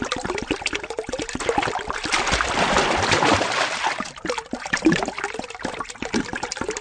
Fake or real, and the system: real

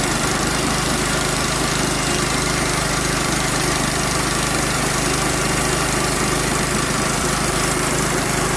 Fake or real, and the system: fake, vocoder, BigVGAN v2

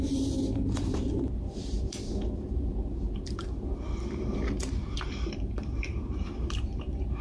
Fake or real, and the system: fake, vocoder, BigVGAN v2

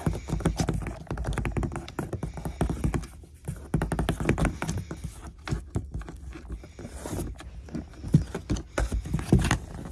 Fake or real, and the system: real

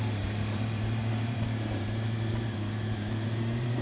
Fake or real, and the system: fake, vocoder, BigVGAN v2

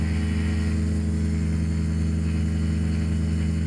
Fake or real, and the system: real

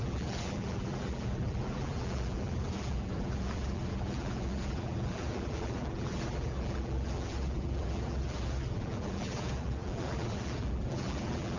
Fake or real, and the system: fake, vocoder, BigVGAN v2